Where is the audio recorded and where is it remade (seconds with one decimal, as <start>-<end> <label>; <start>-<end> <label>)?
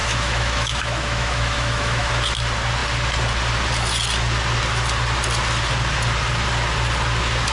0.0-2.1 remade; 2.1-7.5 recorded